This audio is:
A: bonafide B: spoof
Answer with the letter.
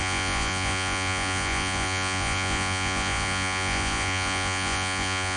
B